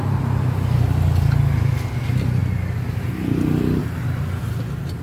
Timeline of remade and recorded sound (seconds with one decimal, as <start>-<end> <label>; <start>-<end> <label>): 0.0-5.0 recorded